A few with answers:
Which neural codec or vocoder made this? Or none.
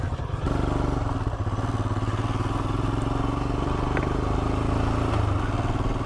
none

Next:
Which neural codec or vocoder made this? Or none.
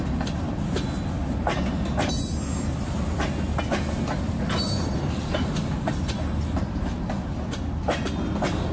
none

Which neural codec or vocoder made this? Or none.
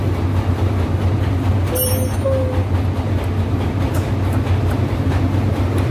none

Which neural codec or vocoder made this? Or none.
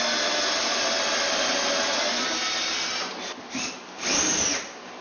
none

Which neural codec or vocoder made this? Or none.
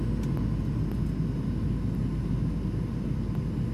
none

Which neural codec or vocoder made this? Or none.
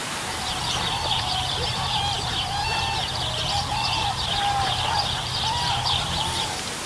vocoder, BigVGAN v2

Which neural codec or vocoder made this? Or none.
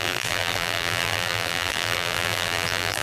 vocoder, BigVGAN v2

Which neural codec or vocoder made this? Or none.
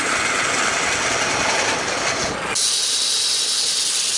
none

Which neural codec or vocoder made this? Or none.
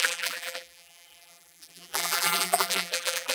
vocoder, BigVGAN v2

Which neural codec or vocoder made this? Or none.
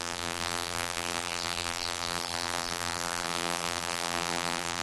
vocoder, BigVGAN v2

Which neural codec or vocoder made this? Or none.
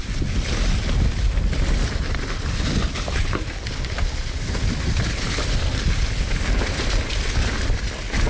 none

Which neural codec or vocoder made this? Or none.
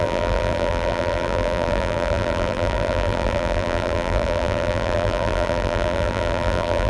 vocoder, BigVGAN v2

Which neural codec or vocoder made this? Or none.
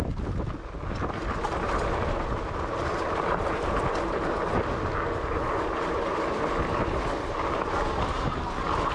none